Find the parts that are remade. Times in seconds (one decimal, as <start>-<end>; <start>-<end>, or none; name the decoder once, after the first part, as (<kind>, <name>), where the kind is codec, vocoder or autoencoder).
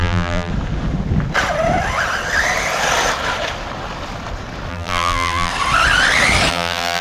0.0-0.5 (vocoder, BigVGAN v2); 4.7-5.5; 6.5-7.0